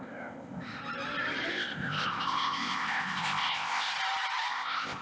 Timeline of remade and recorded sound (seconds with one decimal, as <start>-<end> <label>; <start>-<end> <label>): 0.0-0.8 remade; 0.8-1.5 recorded; 1.5-3.9 remade; 3.9-4.5 recorded; 4.5-5.0 remade